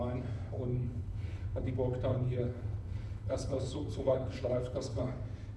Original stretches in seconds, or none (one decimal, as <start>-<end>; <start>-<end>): 0.0-0.7; 1.7-2.1; 5.0-5.6